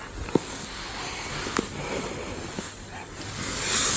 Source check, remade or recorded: recorded